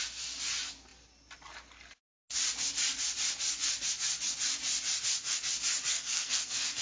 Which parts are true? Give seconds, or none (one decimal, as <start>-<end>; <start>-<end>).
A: 0.0-5.9